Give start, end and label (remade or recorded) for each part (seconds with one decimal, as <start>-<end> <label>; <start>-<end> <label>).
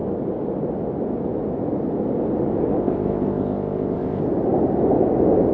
0.0-2.8 recorded; 2.8-4.2 remade; 4.2-5.5 recorded